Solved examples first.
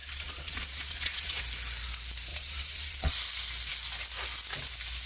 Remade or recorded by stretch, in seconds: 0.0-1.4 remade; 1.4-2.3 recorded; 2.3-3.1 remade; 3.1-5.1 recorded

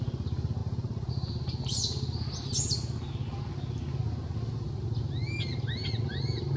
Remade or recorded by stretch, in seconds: 0.0-6.6 recorded

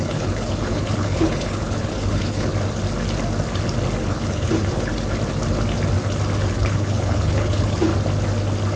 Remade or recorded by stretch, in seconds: 0.0-2.5 remade; 2.5-4.0 recorded; 4.0-4.9 remade; 4.9-6.5 recorded; 6.5-7.9 remade; 7.9-8.8 recorded

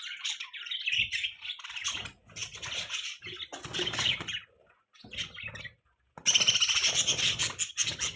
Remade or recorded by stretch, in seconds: 0.0-8.2 recorded

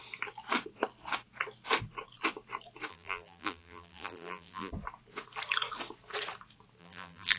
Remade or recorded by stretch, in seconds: 0.0-2.9 recorded; 2.9-4.7 remade; 4.7-6.8 recorded; 6.8-7.4 remade

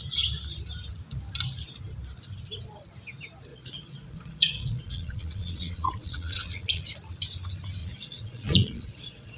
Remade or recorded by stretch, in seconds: 0.0-3.5 recorded; 3.5-6.8 remade; 6.8-7.8 recorded; 7.8-9.4 remade

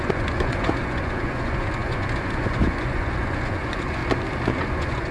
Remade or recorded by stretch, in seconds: 0.0-4.0 remade; 4.0-4.5 recorded; 4.5-5.1 remade